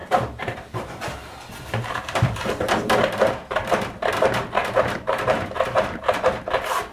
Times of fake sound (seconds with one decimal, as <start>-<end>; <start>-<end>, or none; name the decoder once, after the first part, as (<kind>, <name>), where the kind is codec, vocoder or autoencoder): 0.0-4.1 (vocoder, BigVGAN v2); 4.6-6.4